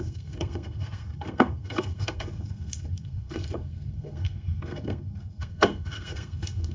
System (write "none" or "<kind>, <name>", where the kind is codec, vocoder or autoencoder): codec, SNAC